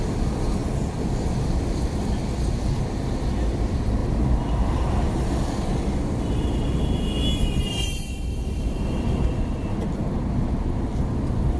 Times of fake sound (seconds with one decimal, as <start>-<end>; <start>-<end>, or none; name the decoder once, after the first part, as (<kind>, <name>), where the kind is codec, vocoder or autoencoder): 0.6-3.3 (vocoder, BigVGAN v2)